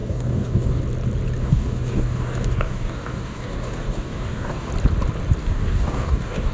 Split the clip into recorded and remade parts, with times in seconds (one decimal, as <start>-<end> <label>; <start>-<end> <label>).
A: 0.0-0.8 remade; 0.8-1.4 recorded; 1.4-4.7 remade; 4.7-5.4 recorded; 5.4-6.5 remade